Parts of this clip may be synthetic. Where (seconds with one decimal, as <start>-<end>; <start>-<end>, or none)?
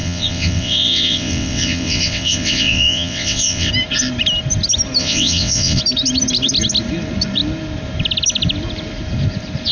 0.0-3.7; 5.0-5.8